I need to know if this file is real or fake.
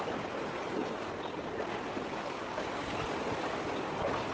real